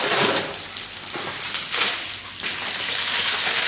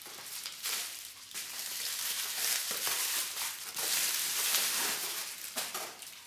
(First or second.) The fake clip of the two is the second